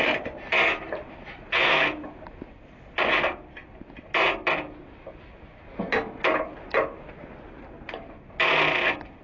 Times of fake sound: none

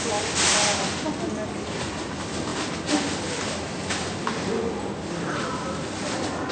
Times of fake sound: none

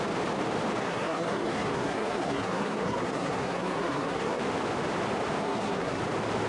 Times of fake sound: 0.8-4.4; 5.4-6.0

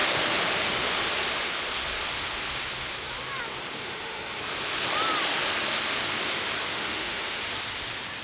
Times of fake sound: 3.8-4.4; 6.7-7.4

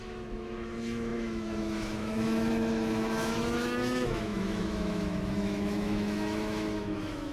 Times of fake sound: 0.0-7.3